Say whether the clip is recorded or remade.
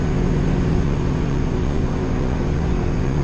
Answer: remade